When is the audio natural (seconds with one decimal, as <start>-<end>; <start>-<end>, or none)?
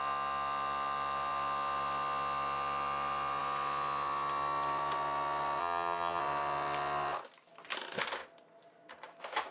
0.0-5.6; 6.2-9.5